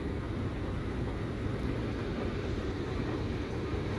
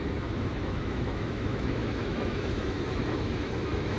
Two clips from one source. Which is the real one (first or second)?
first